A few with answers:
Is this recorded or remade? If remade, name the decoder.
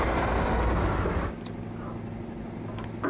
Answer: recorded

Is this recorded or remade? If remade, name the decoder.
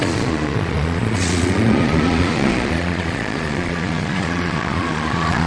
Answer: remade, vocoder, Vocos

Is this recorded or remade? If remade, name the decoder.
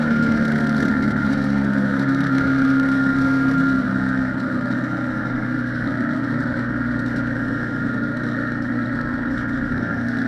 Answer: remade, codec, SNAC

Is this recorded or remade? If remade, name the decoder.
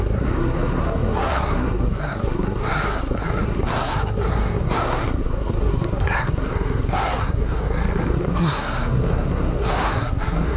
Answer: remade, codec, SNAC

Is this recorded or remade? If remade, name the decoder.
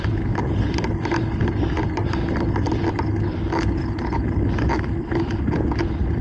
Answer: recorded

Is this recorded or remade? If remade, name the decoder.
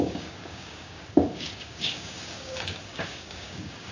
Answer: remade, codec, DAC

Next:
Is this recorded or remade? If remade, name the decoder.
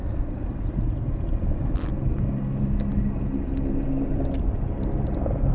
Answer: recorded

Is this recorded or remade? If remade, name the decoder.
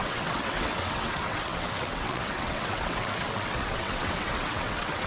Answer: remade, vocoder, WaveNeXt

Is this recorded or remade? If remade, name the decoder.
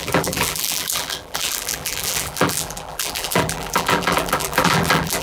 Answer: remade, vocoder, BigVGAN v2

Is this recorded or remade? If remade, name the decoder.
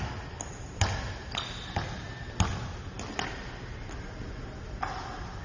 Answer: recorded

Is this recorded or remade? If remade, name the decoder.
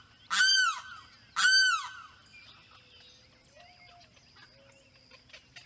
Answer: recorded